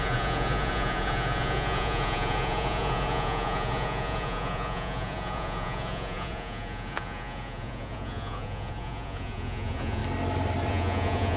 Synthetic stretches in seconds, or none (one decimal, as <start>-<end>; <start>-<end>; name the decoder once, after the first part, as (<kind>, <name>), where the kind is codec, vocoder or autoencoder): 0.0-10.0 (vocoder, Vocos); 10.7-11.4